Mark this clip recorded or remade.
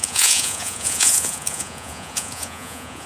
remade